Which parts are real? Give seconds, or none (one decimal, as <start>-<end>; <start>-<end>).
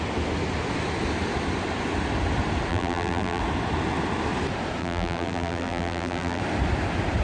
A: 0.0-2.7; 3.4-4.8; 6.4-7.2